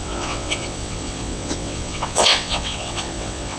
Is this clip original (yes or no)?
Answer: no